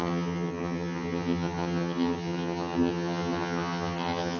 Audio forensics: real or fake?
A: fake